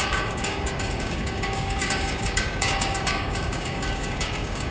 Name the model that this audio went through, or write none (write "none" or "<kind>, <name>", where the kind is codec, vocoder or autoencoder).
codec, DAC